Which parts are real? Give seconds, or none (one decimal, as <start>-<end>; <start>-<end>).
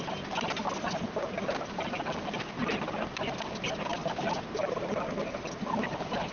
0.0-6.3